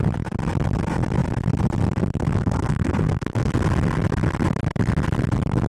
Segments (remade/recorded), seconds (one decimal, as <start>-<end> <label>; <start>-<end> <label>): 0.0-2.3 recorded; 2.3-3.5 remade; 3.5-5.7 recorded